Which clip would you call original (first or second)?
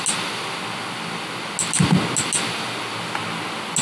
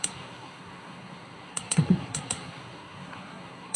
first